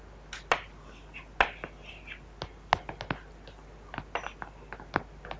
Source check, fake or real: real